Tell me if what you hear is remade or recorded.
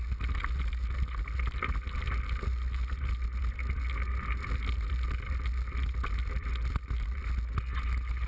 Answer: recorded